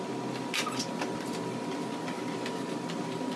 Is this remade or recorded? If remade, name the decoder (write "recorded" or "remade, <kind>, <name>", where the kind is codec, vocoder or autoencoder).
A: recorded